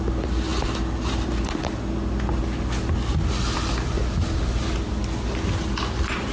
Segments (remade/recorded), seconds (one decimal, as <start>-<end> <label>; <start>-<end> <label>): 0.0-6.3 recorded